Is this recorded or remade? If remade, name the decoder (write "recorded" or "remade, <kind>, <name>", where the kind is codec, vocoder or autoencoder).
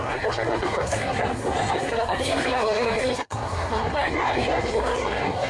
remade, codec, SNAC